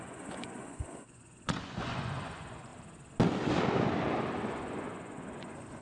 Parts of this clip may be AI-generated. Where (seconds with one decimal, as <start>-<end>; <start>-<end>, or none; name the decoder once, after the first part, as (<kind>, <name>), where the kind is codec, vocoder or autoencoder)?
0.0-2.7 (vocoder, Vocos); 4.4-5.8